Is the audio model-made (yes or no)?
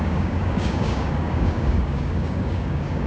yes